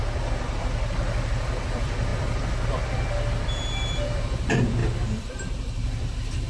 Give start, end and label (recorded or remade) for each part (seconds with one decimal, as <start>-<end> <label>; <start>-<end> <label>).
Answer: 0.0-6.5 remade